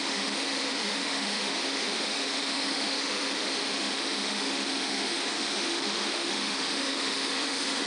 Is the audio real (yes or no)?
no